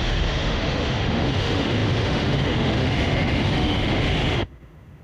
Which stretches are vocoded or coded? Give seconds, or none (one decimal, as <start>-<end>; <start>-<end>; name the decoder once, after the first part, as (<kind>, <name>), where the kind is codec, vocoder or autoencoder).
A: 0.0-5.0 (autoencoder, DAC-VAE)